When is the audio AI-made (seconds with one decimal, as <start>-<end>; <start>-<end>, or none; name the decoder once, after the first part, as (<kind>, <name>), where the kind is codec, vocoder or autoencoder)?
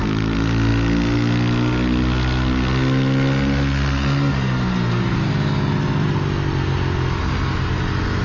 none